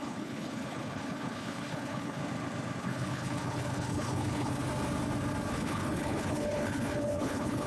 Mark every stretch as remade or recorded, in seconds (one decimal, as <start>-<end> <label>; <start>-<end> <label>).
0.0-2.2 remade; 2.2-2.8 recorded; 2.8-4.6 remade; 4.6-5.5 recorded; 5.5-7.7 remade